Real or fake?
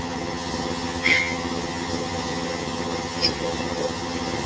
fake